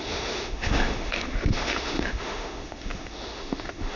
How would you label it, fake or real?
fake